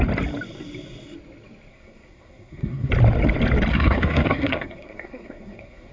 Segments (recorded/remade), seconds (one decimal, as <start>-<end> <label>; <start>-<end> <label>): 0.0-1.7 recorded; 1.7-2.9 remade; 2.9-3.7 recorded; 3.7-5.9 remade